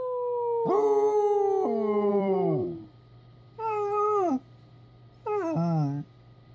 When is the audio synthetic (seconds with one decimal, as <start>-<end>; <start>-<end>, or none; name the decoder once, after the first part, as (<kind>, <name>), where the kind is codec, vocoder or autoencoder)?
2.1-4.6 (vocoder, BigVGAN v2)